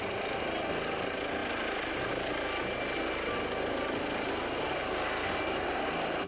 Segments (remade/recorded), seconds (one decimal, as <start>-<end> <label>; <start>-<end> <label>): 0.0-6.3 recorded